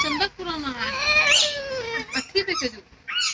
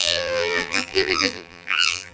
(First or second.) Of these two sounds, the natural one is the first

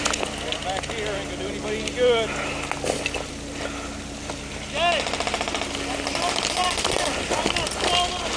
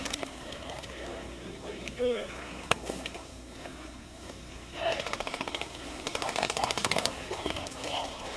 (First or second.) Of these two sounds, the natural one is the first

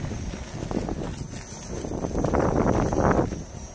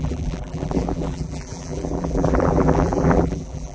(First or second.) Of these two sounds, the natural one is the first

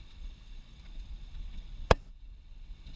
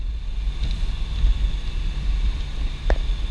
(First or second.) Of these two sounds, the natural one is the second